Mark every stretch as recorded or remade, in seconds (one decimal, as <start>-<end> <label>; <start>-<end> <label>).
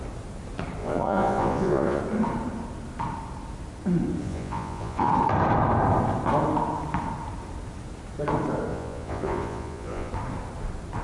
0.0-0.8 recorded; 0.8-2.0 remade; 2.0-4.2 recorded; 4.2-5.1 remade; 5.1-8.7 recorded; 8.7-10.1 remade; 10.1-11.0 recorded